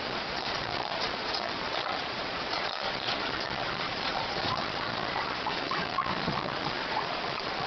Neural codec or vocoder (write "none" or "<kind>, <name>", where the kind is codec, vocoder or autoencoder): vocoder, Vocos